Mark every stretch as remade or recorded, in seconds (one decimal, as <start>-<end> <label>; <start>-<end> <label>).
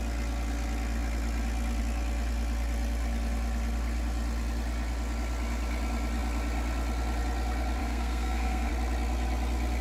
0.0-7.8 recorded; 7.8-8.7 remade; 8.7-9.8 recorded